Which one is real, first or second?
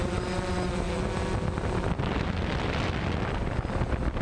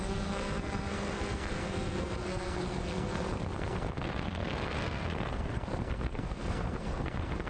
first